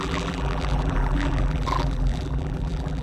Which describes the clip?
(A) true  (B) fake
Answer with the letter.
B